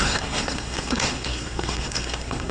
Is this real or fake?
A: fake